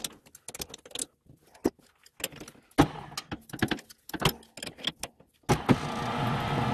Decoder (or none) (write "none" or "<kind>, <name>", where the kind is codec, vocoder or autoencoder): none